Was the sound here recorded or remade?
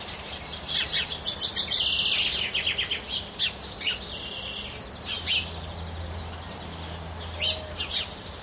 recorded